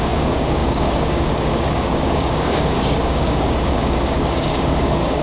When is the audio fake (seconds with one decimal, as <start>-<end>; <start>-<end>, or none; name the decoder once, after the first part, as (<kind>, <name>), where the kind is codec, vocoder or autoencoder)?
0.0-5.2 (codec, DAC)